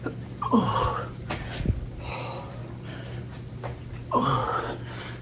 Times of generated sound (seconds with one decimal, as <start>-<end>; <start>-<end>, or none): none